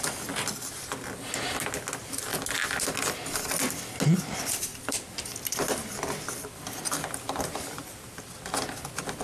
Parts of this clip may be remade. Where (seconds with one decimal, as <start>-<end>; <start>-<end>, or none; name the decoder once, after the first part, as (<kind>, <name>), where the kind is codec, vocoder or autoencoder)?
4.7-8.4 (vocoder, BigVGAN v2)